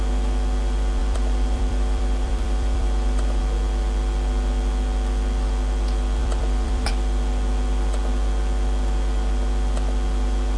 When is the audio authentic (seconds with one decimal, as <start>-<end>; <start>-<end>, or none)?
0.0-1.0; 3.4-6.2; 6.9-10.6

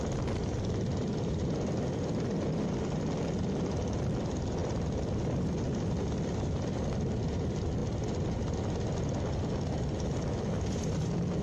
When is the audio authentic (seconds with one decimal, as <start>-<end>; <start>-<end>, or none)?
0.0-11.4

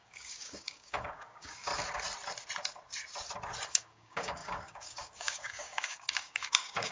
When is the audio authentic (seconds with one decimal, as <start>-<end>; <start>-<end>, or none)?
1.7-3.7